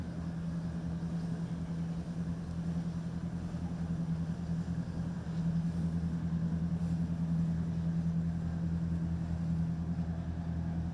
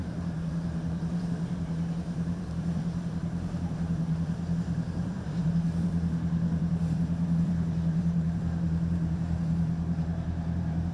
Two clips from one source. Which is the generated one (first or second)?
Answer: second